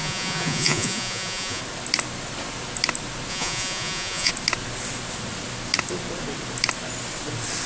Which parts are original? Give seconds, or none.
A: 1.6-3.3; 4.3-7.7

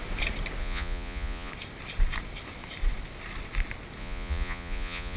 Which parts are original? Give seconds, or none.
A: 0.0-0.6; 1.5-4.0

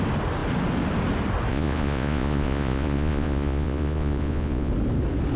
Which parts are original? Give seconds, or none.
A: 0.0-1.5; 4.7-5.4

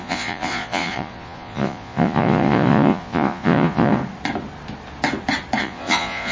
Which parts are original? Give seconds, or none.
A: 4.0-5.6